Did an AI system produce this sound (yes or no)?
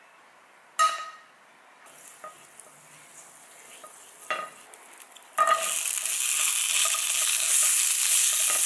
no